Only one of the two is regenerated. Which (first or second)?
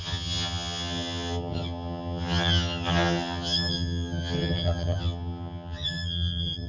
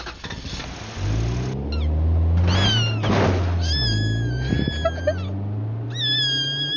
first